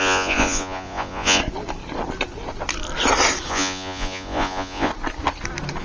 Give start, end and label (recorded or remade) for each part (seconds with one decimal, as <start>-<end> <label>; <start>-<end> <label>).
0.0-1.4 remade; 1.4-3.5 recorded; 3.5-4.9 remade; 4.9-5.8 recorded